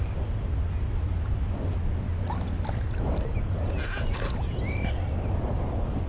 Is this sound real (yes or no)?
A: yes